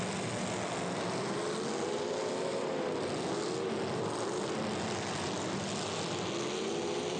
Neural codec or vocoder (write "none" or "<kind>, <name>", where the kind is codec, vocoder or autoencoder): none